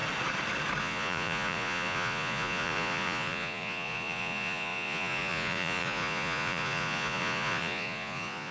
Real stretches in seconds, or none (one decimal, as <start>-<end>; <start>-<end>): 0.0-0.8